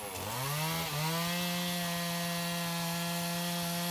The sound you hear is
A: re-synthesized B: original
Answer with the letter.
B